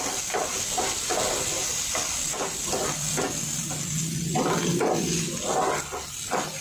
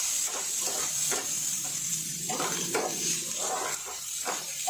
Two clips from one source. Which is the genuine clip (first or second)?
first